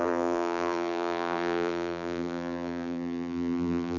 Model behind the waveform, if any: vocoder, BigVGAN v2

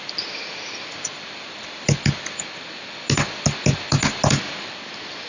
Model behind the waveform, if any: none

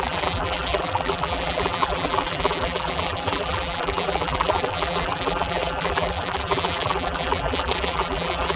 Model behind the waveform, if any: vocoder, BigVGAN v2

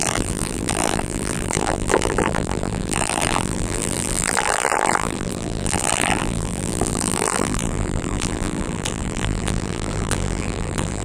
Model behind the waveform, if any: vocoder, BigVGAN v2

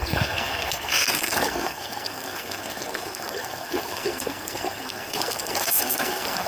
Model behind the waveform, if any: codec, SNAC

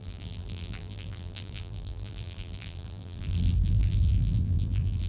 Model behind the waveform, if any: vocoder, BigVGAN v2